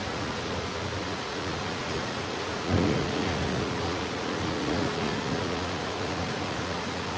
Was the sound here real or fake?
fake